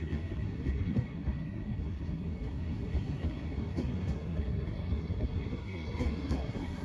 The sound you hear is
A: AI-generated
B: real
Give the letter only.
A